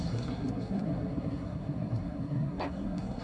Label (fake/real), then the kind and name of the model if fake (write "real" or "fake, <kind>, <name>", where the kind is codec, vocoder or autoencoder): fake, codec, SNAC